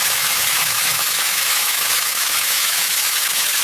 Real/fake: fake